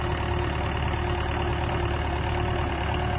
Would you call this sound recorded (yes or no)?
yes